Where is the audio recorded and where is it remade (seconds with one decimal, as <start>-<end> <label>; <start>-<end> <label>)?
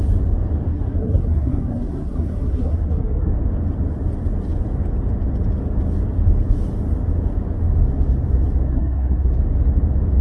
0.0-0.7 recorded; 0.7-3.3 remade; 3.3-8.7 recorded; 8.7-9.3 remade; 9.3-10.2 recorded